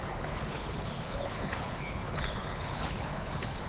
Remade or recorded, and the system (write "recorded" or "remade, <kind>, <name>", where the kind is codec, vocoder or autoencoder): remade, codec, HILCodec